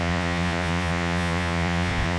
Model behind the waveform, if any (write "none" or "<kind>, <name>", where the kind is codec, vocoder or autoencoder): vocoder, Vocos